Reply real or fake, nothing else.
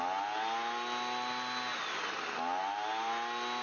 real